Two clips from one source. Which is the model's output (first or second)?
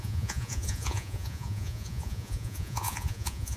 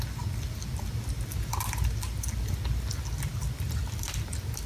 first